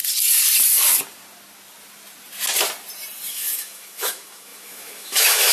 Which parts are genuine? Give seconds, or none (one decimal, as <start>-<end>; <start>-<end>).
0.0-3.3

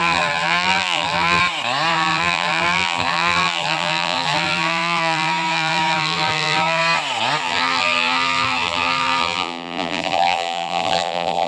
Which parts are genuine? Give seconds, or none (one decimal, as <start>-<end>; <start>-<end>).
1.4-1.9; 6.8-7.4